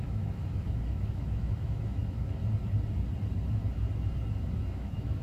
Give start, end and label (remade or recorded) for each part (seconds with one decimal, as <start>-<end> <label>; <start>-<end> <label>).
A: 0.0-2.4 remade; 2.4-4.6 recorded; 4.6-5.2 remade